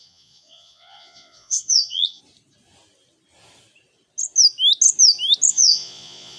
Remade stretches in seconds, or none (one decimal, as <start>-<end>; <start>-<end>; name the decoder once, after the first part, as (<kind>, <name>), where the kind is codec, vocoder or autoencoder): 0.0-2.2 (vocoder, Vocos); 5.5-6.4